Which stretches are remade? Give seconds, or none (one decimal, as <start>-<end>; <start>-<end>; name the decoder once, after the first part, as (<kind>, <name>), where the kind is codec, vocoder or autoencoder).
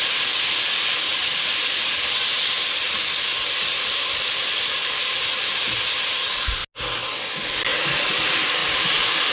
1.1-5.9 (vocoder, BigVGAN v2)